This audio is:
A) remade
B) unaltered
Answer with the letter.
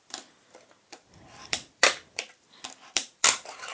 A